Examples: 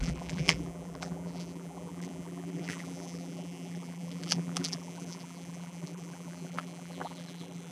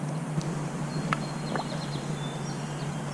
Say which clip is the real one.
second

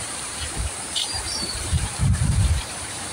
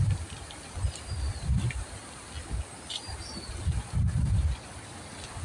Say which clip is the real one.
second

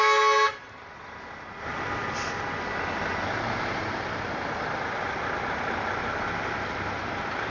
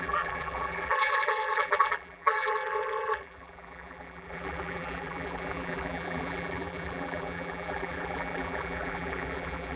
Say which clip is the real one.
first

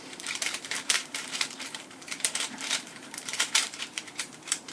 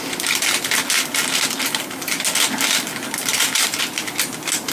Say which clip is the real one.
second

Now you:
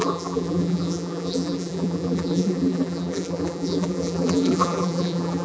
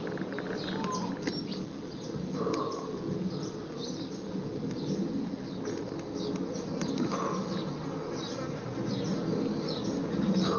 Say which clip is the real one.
second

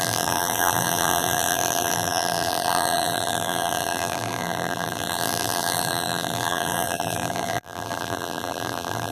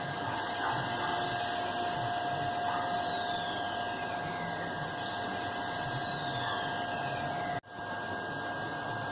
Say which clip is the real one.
second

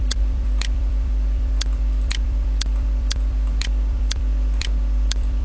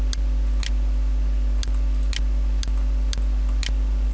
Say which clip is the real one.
second